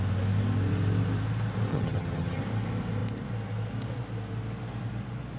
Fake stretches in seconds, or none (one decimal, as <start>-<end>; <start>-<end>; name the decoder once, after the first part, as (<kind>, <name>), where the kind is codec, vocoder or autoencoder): 1.7-2.4 (vocoder, HiFi-GAN)